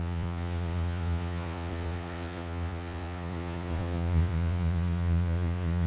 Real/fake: fake